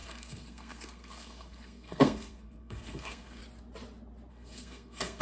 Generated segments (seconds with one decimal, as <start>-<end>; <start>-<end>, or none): 0.0-3.4; 4.3-5.2